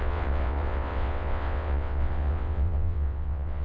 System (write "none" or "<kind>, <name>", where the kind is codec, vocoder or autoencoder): vocoder, WaveNeXt